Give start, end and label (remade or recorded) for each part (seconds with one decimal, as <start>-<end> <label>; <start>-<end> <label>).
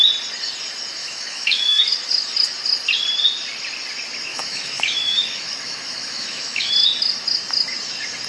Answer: 0.0-1.0 recorded; 1.0-1.9 remade; 1.9-4.3 recorded; 4.3-6.7 remade; 6.7-8.3 recorded